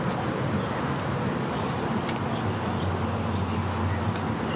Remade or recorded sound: recorded